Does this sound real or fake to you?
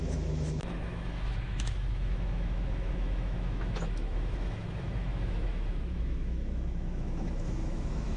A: fake